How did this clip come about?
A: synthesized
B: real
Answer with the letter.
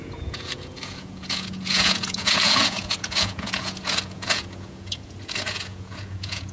A